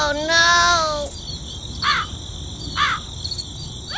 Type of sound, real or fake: real